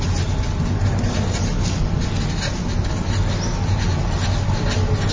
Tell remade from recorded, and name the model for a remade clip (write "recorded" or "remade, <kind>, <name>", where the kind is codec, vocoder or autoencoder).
recorded